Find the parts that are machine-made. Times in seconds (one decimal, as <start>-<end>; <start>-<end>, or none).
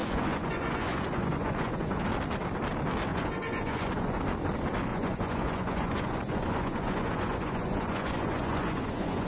0.0-2.0; 3.1-4.2; 4.9-9.3